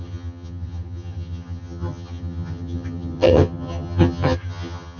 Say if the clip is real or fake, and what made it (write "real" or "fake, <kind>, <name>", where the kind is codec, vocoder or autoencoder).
fake, vocoder, HiFi-GAN